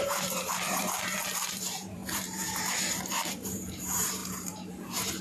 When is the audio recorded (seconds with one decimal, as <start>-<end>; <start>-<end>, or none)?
none